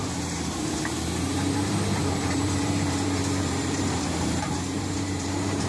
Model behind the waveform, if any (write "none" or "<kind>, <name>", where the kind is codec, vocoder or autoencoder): vocoder, BigVGAN v2